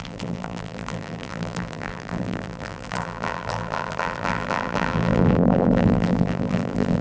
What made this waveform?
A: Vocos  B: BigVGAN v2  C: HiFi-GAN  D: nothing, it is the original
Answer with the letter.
B